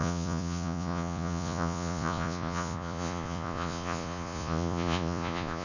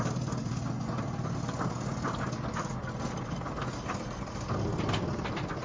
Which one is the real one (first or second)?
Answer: second